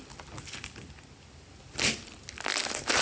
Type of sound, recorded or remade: recorded